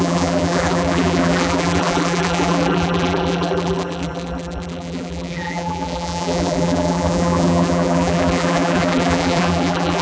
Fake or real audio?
fake